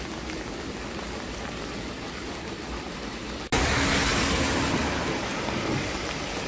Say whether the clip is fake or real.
real